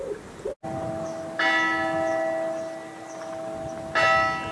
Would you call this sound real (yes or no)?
yes